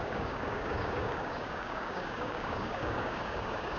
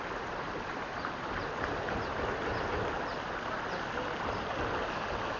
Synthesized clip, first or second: first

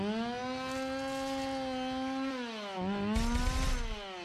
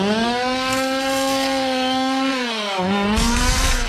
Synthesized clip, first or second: second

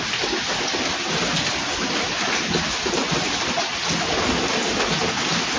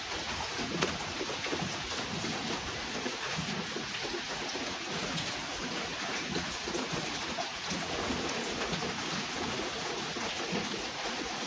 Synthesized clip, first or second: second